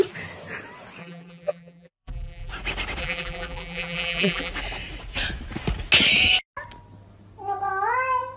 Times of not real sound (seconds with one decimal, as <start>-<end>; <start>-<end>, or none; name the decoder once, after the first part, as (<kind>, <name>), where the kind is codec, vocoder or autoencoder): 1.0-2.5 (vocoder, BigVGAN v2); 3.0-4.5